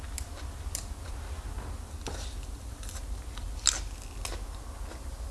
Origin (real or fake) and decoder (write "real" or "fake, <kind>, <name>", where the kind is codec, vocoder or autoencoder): real